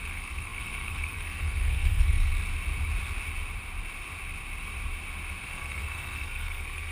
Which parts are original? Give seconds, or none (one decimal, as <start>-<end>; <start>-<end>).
2.3-5.4